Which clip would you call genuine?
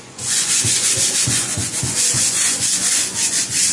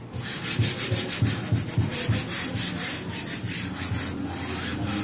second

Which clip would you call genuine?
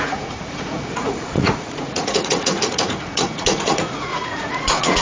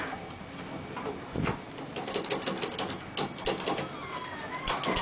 second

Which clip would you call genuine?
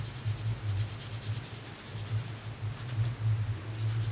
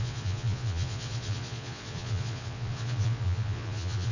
first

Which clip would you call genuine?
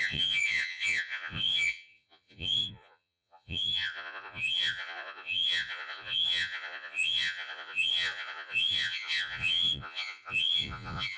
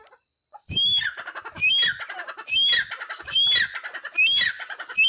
second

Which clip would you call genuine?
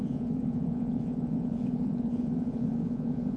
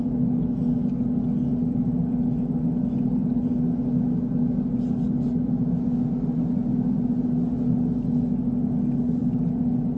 second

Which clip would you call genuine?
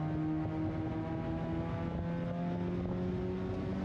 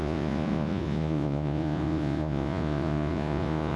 first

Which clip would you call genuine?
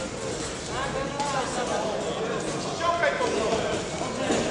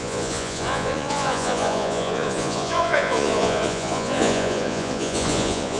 first